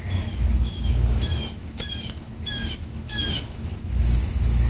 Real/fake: fake